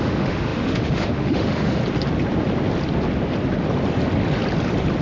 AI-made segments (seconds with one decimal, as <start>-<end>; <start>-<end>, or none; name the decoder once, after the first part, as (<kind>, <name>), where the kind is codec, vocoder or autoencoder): 0.0-1.8 (autoencoder, DAC-VAE)